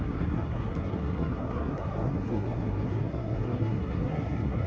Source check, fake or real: fake